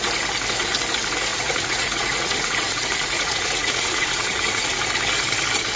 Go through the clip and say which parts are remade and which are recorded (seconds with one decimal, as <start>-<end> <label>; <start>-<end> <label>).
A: 0.0-1.3 recorded; 1.3-4.8 remade; 4.8-5.8 recorded